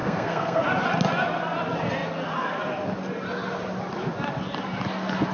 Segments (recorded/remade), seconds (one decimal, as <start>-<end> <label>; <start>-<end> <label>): 0.0-0.6 remade; 0.6-5.3 recorded